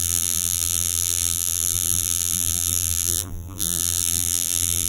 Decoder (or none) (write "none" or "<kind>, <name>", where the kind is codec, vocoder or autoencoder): vocoder, BigVGAN v2